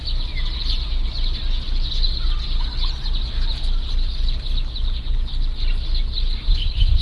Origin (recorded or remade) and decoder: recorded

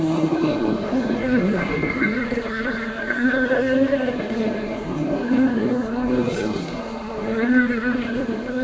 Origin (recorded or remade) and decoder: remade, codec, SNAC